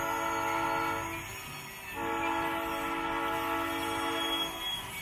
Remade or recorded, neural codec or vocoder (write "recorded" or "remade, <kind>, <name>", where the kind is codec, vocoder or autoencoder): recorded